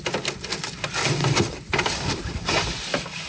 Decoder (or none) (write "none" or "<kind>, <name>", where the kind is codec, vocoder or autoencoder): none